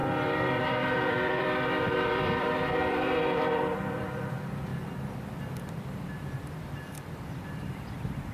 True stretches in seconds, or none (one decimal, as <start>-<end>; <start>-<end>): 4.7-6.1